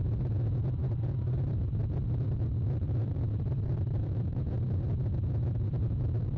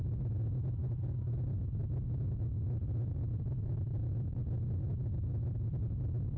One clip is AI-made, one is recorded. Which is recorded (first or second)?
second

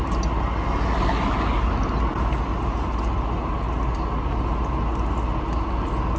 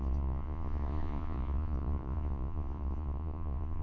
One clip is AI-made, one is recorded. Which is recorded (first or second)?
first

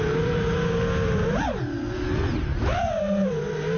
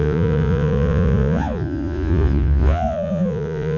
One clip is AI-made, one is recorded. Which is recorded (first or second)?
first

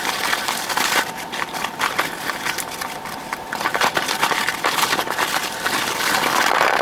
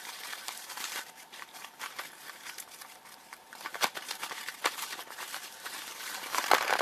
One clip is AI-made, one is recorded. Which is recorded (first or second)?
first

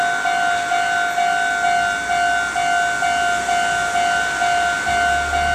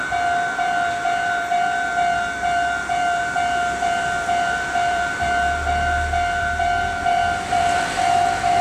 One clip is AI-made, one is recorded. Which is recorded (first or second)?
first